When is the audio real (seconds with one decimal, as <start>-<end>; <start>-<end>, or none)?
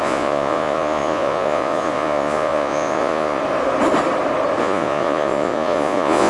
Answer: 3.4-4.6